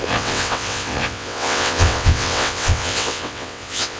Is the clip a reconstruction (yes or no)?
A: yes